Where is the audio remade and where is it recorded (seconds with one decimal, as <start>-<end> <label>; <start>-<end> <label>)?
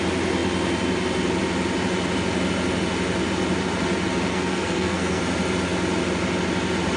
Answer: 0.0-4.3 recorded; 4.3-5.2 remade; 5.2-7.0 recorded